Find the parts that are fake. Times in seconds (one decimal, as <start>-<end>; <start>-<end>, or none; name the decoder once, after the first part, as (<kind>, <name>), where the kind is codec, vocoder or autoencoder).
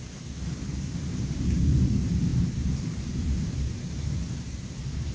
0.0-5.1 (vocoder, BigVGAN v2)